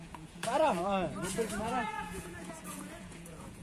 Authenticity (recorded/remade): remade